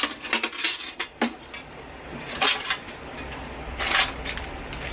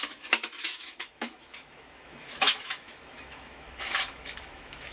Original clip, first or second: first